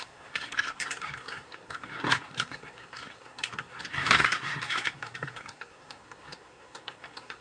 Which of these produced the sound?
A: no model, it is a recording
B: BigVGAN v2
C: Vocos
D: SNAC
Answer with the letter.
D